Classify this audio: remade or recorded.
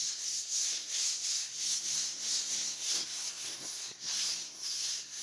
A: remade